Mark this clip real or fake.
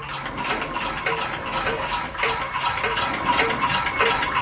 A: real